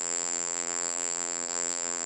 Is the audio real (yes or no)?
no